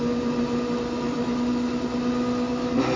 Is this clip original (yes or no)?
yes